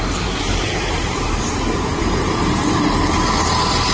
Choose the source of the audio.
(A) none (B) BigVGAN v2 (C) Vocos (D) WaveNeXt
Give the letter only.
B